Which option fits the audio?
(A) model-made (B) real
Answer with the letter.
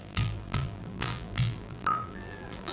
A